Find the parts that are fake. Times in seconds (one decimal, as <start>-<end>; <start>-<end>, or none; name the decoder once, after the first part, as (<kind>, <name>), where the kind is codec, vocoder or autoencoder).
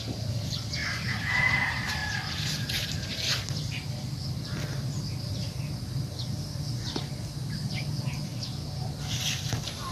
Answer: 0.0-8.3 (vocoder, BigVGAN v2)